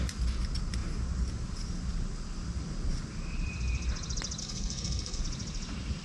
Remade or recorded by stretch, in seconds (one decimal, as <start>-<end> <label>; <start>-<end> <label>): 0.0-4.4 recorded; 4.4-5.2 remade; 5.2-6.0 recorded